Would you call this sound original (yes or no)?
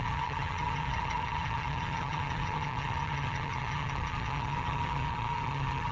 no